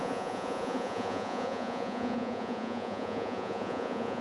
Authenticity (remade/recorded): remade